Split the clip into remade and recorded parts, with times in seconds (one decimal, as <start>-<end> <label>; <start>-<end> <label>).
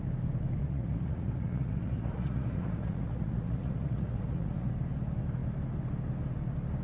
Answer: 0.0-0.6 recorded; 0.6-4.7 remade; 4.7-6.8 recorded